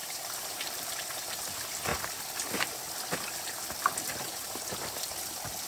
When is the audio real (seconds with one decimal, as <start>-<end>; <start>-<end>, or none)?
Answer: 1.4-5.7